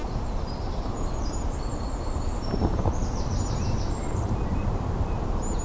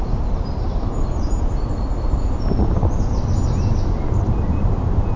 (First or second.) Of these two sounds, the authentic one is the second